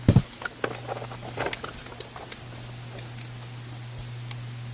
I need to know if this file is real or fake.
real